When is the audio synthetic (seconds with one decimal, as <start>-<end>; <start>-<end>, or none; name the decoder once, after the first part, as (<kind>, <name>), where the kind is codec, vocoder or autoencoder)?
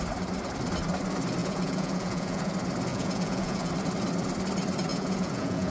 1.4-2.5 (vocoder, Vocos); 2.9-3.7; 4.9-5.7